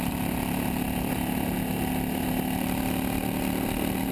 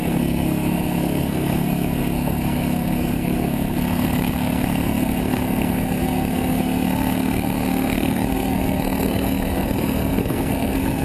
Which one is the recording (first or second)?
first